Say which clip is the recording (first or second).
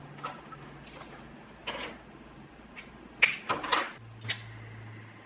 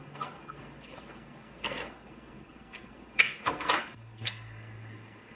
first